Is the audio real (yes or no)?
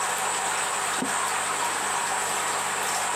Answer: yes